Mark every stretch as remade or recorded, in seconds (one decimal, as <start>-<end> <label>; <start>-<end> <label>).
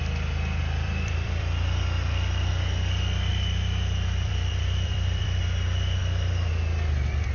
0.0-0.6 recorded; 0.6-2.5 remade; 2.5-3.3 recorded; 3.3-5.4 remade; 5.4-7.3 recorded